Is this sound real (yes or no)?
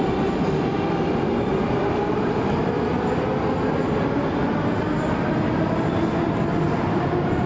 yes